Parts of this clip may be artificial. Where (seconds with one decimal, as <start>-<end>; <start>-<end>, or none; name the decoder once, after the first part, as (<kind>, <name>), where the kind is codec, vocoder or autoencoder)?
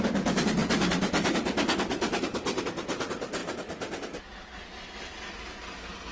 none